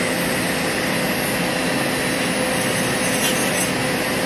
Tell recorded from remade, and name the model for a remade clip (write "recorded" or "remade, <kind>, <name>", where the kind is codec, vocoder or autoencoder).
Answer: recorded